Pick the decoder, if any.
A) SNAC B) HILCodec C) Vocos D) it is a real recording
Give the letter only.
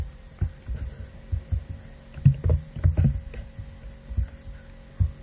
D